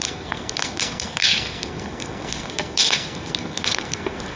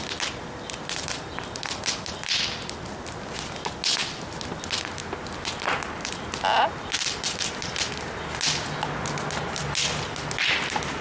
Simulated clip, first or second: first